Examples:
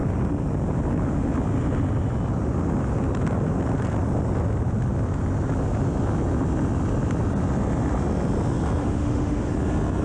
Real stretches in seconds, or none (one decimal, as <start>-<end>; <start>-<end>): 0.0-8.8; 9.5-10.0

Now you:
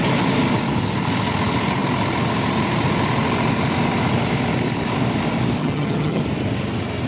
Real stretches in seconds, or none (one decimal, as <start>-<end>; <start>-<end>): 0.0-5.6; 6.2-7.1

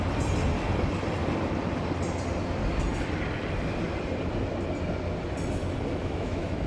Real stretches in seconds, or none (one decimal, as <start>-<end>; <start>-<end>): 0.0-6.0

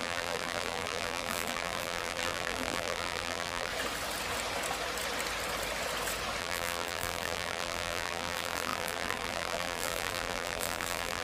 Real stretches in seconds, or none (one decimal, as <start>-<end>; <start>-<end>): 3.7-6.4

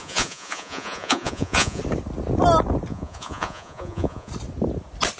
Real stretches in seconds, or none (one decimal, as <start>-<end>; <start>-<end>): 1.8-2.9; 4.3-5.2

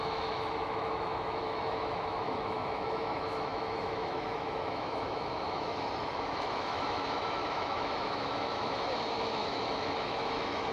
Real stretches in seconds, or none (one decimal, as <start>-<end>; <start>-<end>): none